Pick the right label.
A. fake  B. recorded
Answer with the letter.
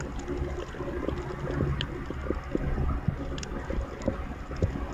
B